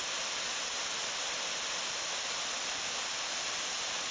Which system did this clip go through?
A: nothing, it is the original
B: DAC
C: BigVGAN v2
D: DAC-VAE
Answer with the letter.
A